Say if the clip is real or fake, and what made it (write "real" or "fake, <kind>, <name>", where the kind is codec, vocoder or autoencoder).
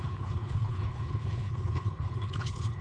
fake, codec, HILCodec